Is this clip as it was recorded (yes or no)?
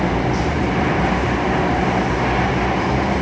yes